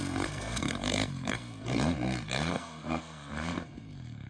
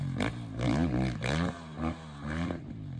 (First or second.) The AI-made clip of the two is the first